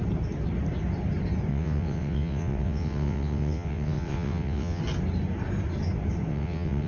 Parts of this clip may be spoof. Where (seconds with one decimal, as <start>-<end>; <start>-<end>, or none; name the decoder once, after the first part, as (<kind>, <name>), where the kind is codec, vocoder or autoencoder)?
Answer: 1.5-4.8 (vocoder, WaveNeXt); 6.3-6.9